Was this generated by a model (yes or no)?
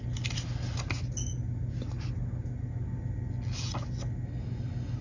no